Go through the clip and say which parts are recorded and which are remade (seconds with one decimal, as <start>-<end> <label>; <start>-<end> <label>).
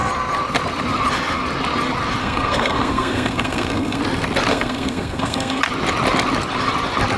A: 0.0-2.2 recorded; 2.2-4.0 remade; 4.0-4.5 recorded; 4.5-5.6 remade; 5.6-7.2 recorded